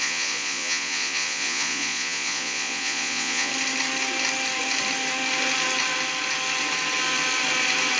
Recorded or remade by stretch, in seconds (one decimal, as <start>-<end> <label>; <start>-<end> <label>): 0.0-3.5 remade; 3.5-8.0 recorded